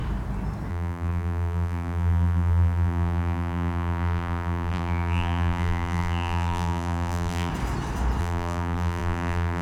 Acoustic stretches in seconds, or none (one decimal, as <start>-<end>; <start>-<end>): 0.0-0.7; 7.5-8.2